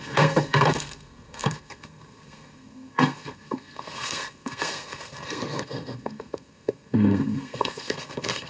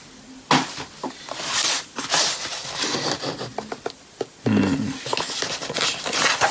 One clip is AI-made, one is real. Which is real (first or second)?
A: second